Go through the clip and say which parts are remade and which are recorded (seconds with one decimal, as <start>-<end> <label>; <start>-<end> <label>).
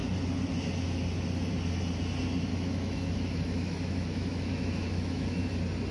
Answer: 0.0-2.5 recorded; 2.5-5.5 remade; 5.5-5.9 recorded